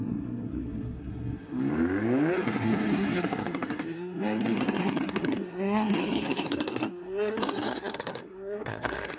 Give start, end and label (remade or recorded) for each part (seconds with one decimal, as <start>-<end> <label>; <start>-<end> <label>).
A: 0.0-1.7 remade; 1.7-2.3 recorded; 2.3-9.2 remade